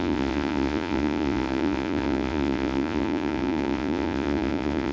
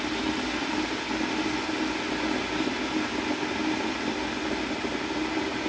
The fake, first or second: first